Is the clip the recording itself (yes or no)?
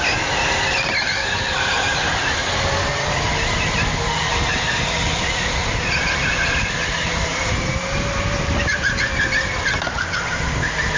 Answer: yes